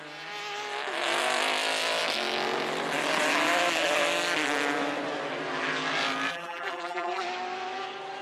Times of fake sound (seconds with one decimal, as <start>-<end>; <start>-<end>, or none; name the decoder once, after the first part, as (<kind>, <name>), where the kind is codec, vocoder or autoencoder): 6.3-7.2 (vocoder, BigVGAN v2)